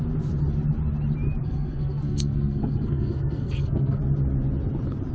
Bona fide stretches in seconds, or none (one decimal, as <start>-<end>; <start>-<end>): 0.0-1.4; 4.0-5.1